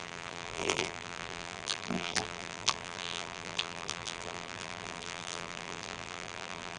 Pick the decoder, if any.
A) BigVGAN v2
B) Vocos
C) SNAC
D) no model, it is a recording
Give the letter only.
A